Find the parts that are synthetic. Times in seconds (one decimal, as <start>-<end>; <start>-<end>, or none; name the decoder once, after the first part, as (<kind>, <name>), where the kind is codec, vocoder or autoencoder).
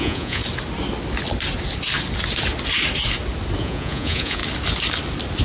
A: 0.0-0.4 (vocoder, Vocos); 3.6-4.4